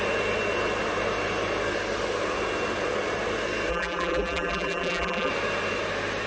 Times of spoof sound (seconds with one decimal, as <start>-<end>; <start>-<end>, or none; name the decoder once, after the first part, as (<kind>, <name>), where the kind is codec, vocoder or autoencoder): 3.7-5.3 (vocoder, BigVGAN v2)